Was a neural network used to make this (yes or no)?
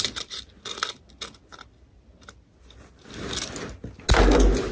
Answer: no